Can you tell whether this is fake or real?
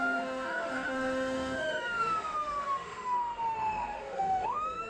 fake